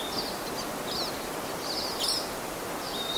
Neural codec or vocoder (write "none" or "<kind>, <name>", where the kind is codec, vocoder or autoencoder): none